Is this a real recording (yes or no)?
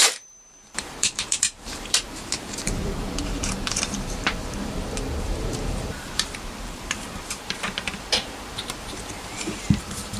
no